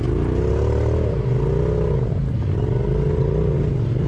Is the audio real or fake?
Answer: real